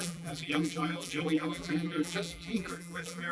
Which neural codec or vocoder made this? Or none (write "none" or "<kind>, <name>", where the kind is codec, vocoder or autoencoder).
vocoder, BigVGAN v2